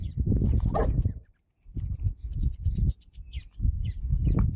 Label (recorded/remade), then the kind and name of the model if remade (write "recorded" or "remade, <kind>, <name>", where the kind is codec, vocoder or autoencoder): remade, vocoder, BigVGAN v2